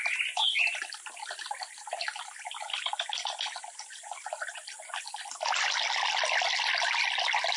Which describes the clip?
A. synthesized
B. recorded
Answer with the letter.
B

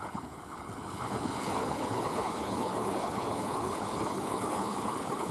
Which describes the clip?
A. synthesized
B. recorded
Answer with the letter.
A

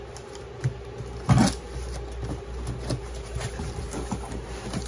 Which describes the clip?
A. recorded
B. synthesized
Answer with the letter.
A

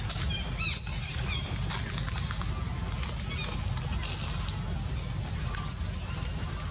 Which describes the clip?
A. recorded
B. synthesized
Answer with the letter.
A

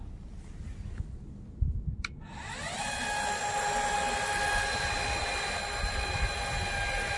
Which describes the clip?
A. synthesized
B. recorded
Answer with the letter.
B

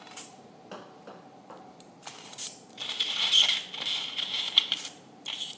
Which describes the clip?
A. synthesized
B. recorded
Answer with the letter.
A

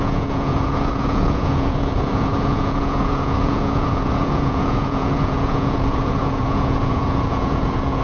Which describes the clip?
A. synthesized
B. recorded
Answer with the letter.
A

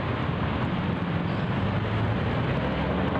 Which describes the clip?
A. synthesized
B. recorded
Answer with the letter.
B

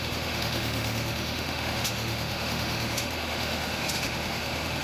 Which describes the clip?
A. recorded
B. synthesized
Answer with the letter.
B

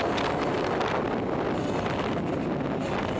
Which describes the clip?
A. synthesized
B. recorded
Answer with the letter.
B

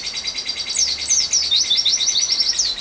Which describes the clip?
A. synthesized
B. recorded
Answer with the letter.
B